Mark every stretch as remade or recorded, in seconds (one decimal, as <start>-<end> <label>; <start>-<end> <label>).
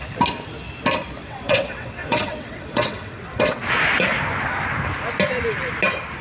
0.0-1.2 recorded; 1.2-3.6 remade; 3.6-6.2 recorded